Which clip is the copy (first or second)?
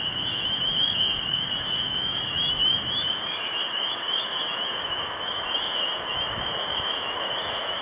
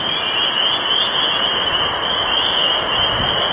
first